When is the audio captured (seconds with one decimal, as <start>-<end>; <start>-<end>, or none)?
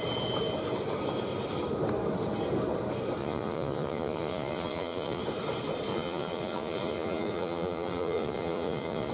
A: 0.0-3.2; 5.2-5.9